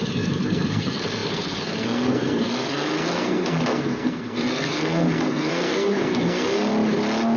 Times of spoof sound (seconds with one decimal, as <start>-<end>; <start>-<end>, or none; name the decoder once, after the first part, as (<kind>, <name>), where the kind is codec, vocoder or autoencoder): 0.0-6.7 (codec, SNAC)